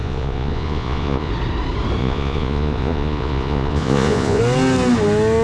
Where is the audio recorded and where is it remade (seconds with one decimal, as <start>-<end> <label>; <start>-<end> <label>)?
0.0-1.3 remade; 1.3-2.0 recorded; 2.0-4.4 remade; 4.4-5.4 recorded